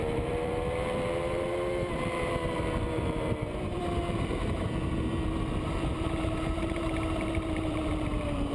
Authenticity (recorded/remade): remade